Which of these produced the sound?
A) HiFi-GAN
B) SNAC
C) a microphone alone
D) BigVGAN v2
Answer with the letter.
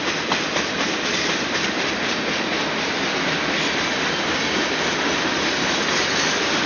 C